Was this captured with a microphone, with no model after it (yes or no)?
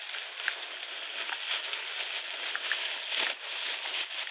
yes